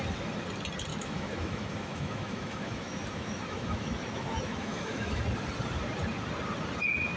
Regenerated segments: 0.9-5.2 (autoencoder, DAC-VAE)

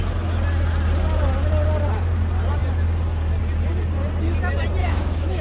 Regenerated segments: 4.8-5.4 (autoencoder, DAC-VAE)

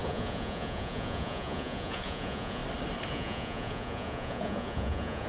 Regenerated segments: 0.0-2.6 (vocoder, Vocos); 3.1-5.3

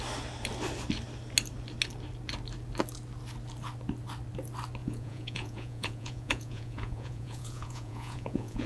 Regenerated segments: 4.8-8.7 (vocoder, Vocos)

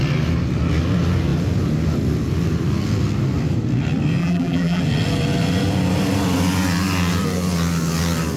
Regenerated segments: 4.2-4.8 (vocoder, BigVGAN v2)